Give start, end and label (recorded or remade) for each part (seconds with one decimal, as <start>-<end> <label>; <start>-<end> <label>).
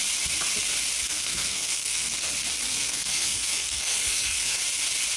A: 0.0-1.0 recorded; 1.0-2.3 remade; 2.3-2.7 recorded; 2.7-4.6 remade; 4.6-5.2 recorded